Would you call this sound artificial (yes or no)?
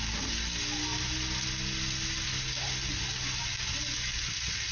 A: no